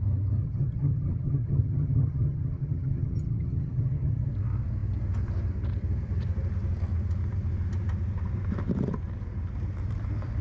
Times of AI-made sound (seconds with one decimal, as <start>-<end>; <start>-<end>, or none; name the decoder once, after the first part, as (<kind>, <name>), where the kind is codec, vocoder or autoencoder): 0.4-4.3 (vocoder, HiFi-GAN)

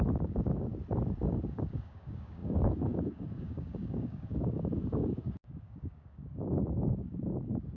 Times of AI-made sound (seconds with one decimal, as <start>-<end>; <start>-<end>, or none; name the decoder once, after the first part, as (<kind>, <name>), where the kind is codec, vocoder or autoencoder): 0.0-0.7 (codec, DAC); 1.4-7.8

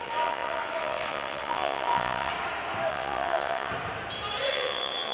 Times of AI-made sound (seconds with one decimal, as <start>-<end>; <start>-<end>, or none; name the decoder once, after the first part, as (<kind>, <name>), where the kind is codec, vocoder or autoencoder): 0.0-2.3 (vocoder, WaveNeXt); 2.9-3.7; 4.5-5.1

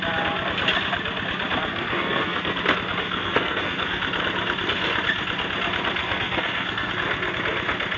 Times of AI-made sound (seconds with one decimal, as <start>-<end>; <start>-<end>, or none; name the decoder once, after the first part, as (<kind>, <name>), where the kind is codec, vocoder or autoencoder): 1.7-2.6 (codec, SNAC); 3.0-4.0; 6.0-6.9